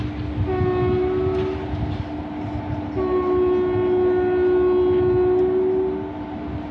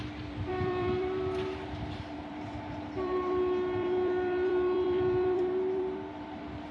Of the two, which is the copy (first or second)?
second